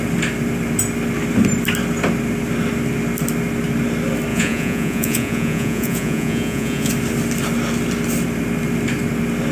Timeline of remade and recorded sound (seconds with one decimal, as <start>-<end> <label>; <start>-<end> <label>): 0.0-4.3 recorded; 4.3-6.9 remade; 6.9-9.5 recorded